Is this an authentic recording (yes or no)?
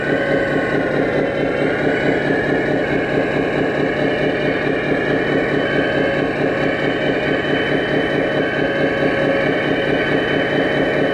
yes